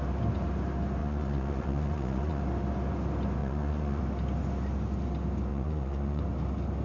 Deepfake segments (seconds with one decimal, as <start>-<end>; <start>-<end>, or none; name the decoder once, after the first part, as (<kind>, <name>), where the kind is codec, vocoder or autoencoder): 1.0-2.4 (vocoder, Vocos); 3.4-4.0; 5.5-6.2